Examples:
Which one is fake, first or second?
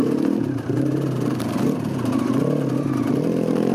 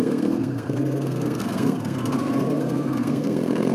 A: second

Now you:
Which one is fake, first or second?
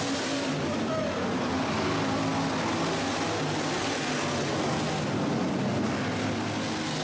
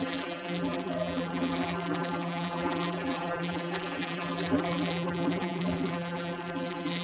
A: second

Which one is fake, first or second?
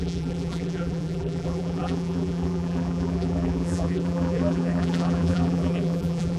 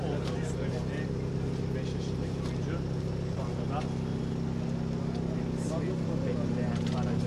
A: first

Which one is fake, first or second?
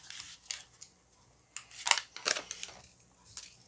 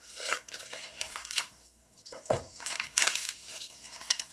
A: second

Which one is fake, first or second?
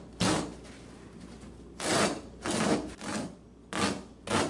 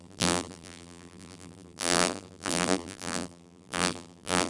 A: second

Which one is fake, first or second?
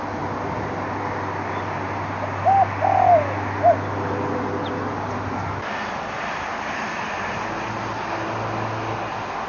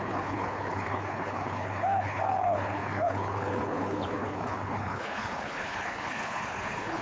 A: second